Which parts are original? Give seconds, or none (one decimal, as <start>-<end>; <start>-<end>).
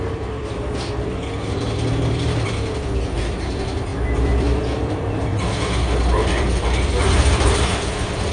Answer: none